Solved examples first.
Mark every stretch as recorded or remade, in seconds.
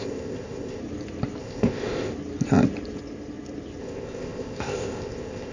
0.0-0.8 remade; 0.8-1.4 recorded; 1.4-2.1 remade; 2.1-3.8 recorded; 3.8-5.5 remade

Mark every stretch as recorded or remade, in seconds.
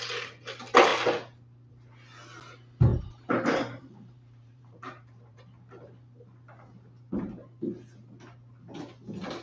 0.0-2.9 recorded; 2.9-5.4 remade; 5.4-9.4 recorded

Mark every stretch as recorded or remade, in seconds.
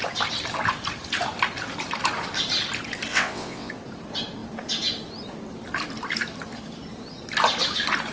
0.0-3.1 recorded; 3.1-3.7 remade; 3.7-8.1 recorded